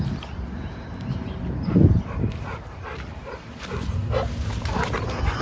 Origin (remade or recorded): recorded